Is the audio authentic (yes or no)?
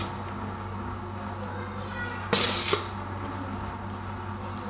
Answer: yes